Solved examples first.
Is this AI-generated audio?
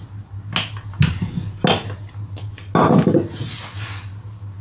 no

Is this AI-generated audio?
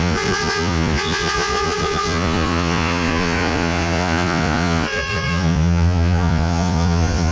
yes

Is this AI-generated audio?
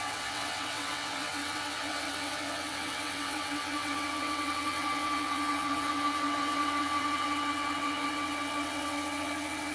yes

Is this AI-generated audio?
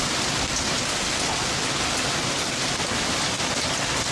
no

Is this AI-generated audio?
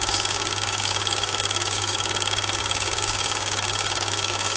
yes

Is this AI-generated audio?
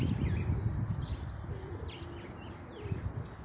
no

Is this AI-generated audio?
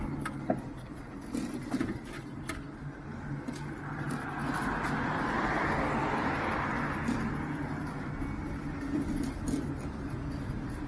no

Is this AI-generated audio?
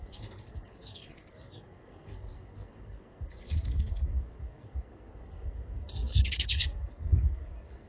yes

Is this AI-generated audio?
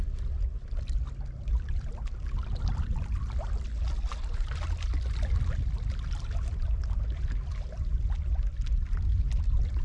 no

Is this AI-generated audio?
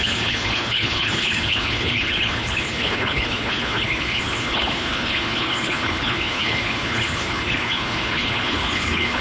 yes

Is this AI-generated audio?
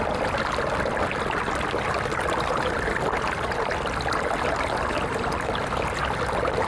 no